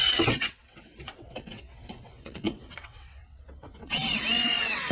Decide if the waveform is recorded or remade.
remade